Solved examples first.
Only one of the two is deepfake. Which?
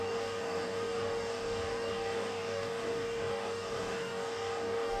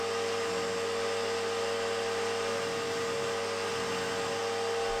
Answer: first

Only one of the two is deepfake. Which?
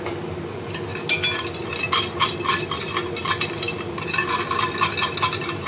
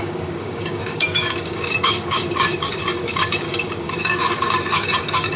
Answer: second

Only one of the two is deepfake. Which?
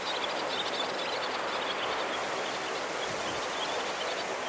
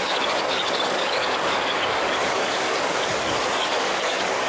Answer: second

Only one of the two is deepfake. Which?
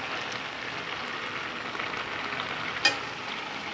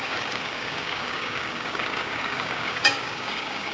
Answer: second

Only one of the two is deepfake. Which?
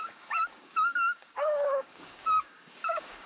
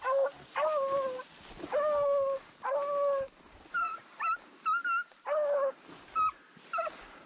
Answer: first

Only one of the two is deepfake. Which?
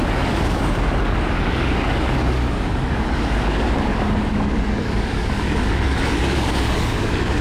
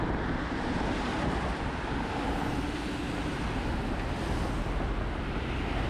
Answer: first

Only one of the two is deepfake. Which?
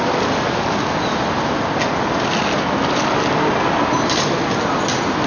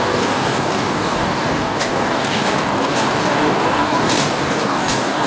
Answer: second